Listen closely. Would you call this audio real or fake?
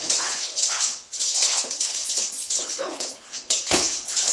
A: fake